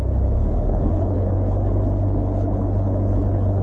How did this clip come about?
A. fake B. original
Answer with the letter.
A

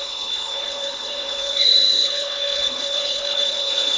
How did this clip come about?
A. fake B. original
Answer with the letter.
A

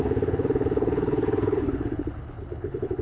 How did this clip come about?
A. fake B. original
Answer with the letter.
A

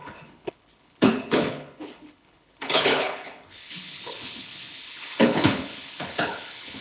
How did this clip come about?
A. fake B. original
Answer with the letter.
A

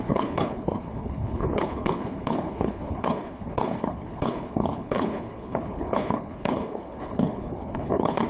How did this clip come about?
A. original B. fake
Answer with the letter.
B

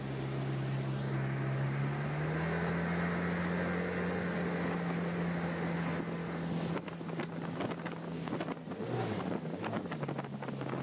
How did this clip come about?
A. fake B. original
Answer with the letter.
B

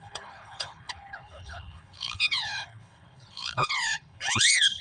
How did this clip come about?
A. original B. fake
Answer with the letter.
B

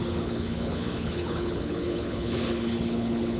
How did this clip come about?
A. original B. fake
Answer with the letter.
B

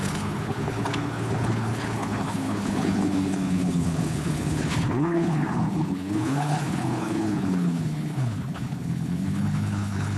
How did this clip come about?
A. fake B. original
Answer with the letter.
A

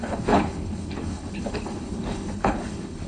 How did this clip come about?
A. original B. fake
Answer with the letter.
B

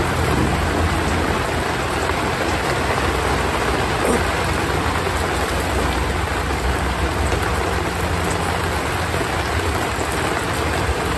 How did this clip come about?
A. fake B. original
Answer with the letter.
B